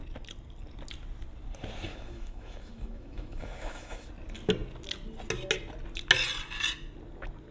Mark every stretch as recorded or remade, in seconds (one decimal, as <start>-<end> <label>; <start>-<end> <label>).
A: 0.0-1.9 recorded; 1.9-4.1 remade; 4.1-7.5 recorded